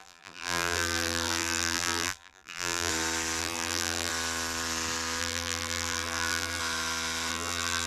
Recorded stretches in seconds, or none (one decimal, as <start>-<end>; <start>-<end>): 2.9-3.4; 4.1-5.2; 6.6-7.3